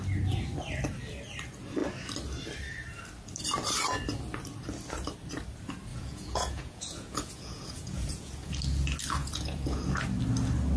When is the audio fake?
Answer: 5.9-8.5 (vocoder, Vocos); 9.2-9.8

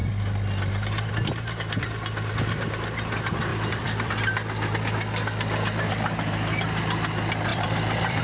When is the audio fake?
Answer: 3.5-4.1 (vocoder, BigVGAN v2); 7.5-8.2

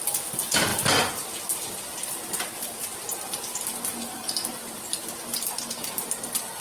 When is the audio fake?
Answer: none

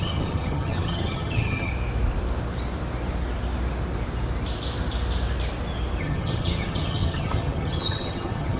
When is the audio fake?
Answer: 0.0-1.7 (vocoder, HiFi-GAN); 6.0-8.6

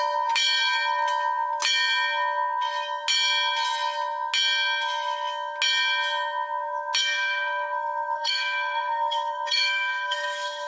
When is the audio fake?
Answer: 7.0-10.7 (codec, SNAC)

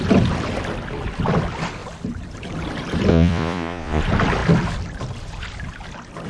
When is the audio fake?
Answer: 3.1-4.0 (vocoder, Vocos)

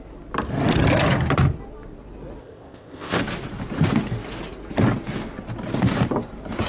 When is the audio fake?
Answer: 2.4-3.2 (codec, ZipCodec)